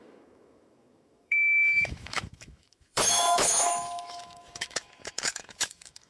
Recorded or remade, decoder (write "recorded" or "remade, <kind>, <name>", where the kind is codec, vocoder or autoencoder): remade, autoencoder, DAC-VAE